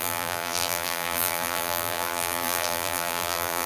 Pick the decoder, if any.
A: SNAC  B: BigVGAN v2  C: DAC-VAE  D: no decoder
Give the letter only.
B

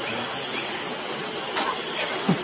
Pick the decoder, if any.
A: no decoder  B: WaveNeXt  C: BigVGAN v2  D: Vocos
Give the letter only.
A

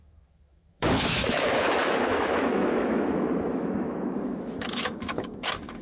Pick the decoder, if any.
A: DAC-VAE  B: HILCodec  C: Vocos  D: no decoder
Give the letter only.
A